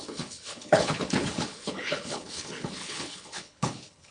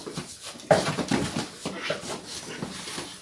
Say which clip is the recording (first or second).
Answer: second